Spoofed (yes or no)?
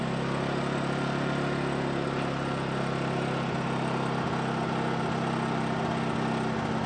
no